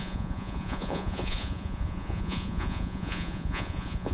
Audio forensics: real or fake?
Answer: fake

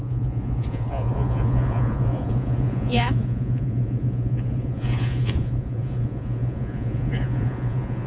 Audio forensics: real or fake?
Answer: fake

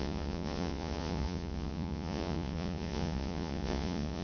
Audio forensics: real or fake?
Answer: fake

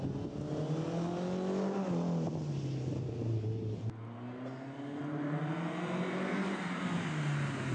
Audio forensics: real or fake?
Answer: real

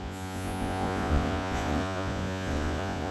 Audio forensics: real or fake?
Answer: fake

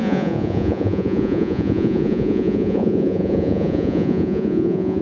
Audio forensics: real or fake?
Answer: fake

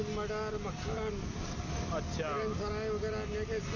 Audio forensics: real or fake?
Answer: real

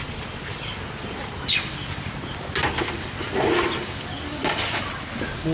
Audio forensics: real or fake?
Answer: real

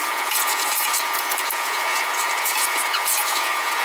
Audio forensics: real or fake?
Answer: fake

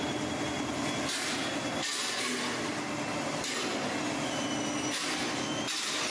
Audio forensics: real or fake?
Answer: real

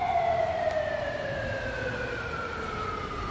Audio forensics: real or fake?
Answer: real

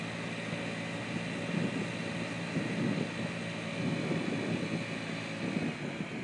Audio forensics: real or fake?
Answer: real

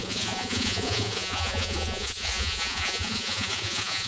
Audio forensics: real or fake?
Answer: fake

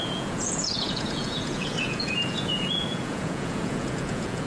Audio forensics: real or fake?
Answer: fake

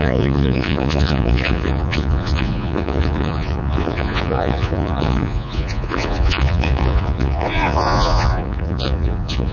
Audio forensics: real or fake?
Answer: fake